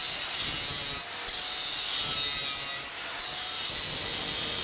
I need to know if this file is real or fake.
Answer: real